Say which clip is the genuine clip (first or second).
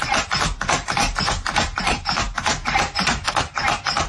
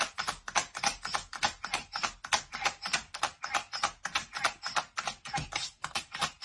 second